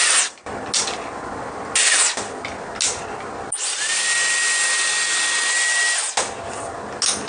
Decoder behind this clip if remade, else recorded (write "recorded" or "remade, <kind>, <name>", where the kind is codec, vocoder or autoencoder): recorded